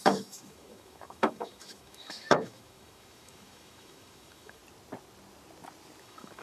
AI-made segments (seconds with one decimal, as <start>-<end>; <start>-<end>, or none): 0.0-4.6; 6.0-6.4